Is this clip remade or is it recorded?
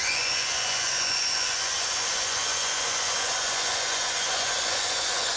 remade